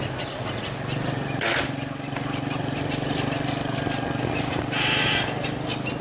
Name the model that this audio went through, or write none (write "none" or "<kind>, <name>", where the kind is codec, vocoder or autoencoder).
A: none